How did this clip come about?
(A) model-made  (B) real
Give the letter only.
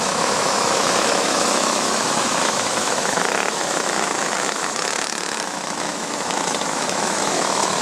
A